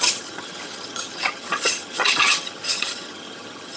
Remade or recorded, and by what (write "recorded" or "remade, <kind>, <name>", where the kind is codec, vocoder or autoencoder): remade, vocoder, HiFi-GAN